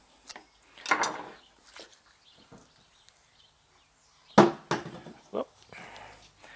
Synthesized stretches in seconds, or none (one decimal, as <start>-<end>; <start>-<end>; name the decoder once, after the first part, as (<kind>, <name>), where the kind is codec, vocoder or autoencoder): none